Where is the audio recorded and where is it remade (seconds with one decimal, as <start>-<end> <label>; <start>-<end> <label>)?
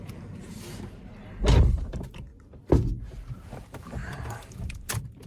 0.0-2.3 remade; 2.3-3.0 recorded; 3.0-5.3 remade